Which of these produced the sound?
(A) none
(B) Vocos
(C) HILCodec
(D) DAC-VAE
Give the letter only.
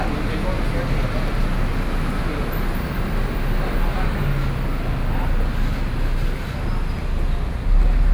A